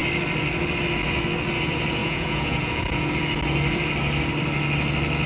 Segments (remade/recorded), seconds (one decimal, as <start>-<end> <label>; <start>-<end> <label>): 0.0-2.0 recorded; 2.0-3.1 remade; 3.1-5.3 recorded